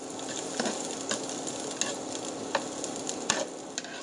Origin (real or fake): real